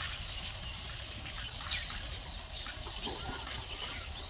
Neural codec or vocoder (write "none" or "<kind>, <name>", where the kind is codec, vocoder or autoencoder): none